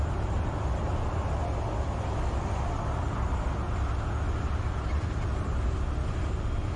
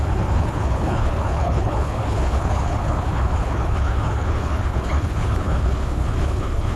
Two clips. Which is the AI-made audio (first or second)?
second